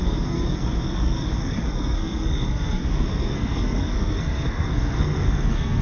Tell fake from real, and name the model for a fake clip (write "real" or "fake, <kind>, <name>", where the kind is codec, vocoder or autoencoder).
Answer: fake, codec, SNAC